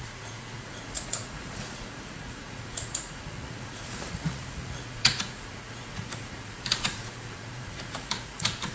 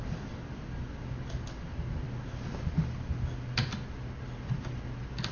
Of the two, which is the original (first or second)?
second